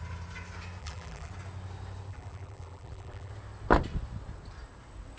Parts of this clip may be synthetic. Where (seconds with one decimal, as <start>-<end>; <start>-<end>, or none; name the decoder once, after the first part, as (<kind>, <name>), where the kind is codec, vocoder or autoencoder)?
0.8-1.3 (vocoder, BigVGAN v2); 2.1-3.3